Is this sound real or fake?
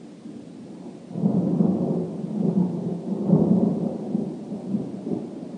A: real